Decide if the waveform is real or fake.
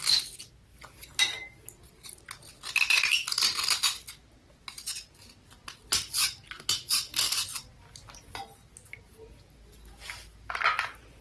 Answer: real